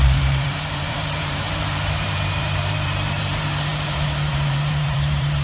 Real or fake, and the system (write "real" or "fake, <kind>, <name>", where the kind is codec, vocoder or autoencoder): fake, vocoder, BigVGAN v2